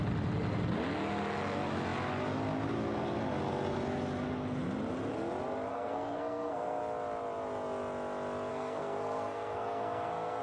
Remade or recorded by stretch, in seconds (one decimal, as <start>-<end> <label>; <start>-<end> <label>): 0.0-5.7 recorded; 5.7-6.8 remade; 6.8-8.5 recorded; 8.5-10.4 remade